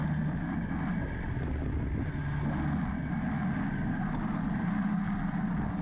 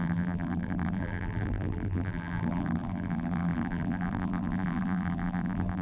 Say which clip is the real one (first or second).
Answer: first